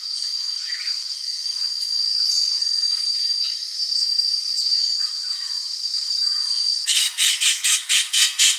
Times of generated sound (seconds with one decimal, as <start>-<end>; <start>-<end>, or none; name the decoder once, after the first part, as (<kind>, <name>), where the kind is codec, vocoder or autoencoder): 0.0-8.6 (codec, SNAC)